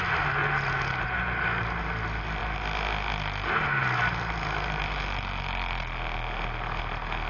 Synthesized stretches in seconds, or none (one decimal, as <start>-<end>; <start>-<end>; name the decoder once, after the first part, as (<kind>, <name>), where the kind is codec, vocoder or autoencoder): none